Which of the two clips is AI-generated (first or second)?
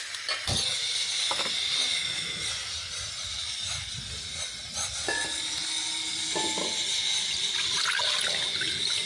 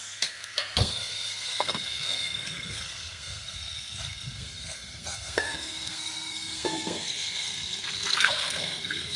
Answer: second